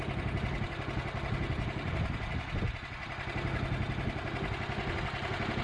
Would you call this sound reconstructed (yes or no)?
no